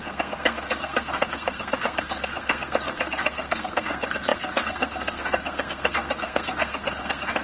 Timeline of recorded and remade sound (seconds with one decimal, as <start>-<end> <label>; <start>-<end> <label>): 0.0-7.4 remade